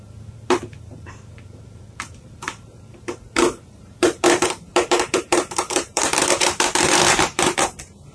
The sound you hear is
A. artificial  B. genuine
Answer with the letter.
A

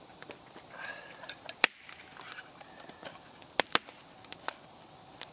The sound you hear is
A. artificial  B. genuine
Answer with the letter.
B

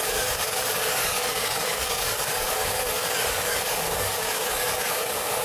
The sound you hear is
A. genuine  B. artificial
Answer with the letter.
B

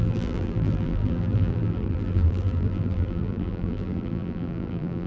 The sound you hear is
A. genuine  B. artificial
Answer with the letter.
B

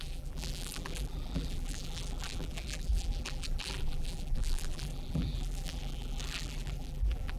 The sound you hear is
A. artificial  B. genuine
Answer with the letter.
A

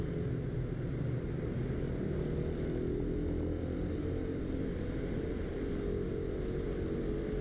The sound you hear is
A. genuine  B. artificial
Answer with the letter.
A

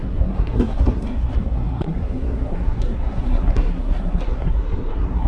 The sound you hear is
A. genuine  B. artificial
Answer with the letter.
B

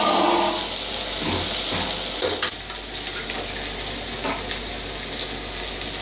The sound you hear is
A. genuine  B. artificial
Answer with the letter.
A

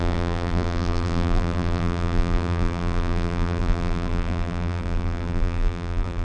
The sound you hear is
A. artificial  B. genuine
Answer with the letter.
A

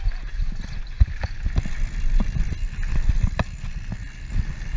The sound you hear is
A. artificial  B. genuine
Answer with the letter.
B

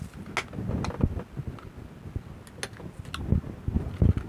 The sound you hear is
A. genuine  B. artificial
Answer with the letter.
A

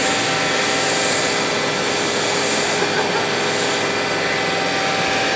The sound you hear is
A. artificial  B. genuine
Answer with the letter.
B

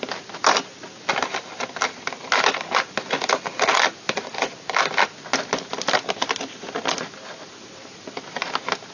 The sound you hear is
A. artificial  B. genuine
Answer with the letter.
B